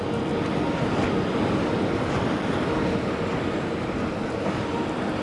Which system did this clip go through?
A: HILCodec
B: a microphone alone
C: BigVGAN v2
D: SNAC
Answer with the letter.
B